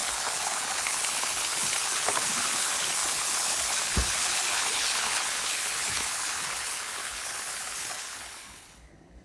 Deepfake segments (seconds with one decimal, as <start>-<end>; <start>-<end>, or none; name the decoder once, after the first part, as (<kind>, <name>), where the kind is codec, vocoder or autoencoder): 0.0-9.2 (codec, HILCodec)